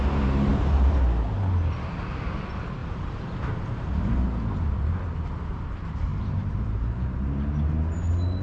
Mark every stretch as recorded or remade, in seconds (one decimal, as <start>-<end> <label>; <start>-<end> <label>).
0.0-0.5 recorded; 0.5-1.0 remade; 1.0-2.8 recorded; 2.8-4.2 remade; 4.2-6.1 recorded; 6.1-7.2 remade; 7.2-8.4 recorded

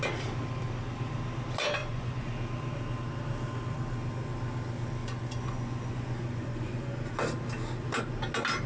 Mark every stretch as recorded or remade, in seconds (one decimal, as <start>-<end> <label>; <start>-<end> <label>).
0.0-1.8 recorded; 1.8-2.3 remade; 2.3-5.0 recorded; 5.0-7.1 remade; 7.1-8.7 recorded

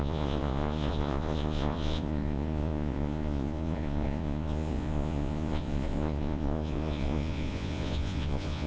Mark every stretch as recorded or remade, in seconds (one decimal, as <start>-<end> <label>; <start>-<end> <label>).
0.0-8.7 remade

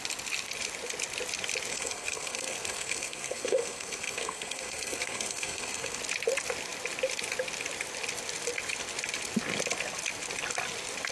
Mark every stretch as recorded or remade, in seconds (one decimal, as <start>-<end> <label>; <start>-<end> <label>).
0.0-1.7 recorded; 1.7-6.0 remade; 6.0-11.1 recorded

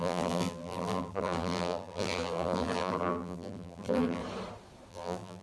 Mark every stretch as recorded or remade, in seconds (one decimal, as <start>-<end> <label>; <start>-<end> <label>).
0.0-4.2 remade; 4.2-4.9 recorded; 4.9-5.4 remade